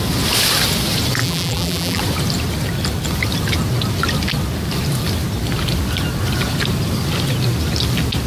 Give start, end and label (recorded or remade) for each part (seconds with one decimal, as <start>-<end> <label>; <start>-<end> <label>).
0.0-1.2 recorded; 1.2-2.0 remade; 2.0-8.3 recorded